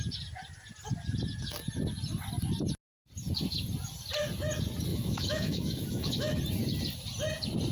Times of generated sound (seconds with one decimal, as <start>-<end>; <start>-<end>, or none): 4.9-6.4